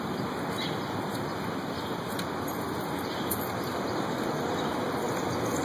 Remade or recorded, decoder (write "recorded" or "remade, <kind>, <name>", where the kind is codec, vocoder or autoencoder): recorded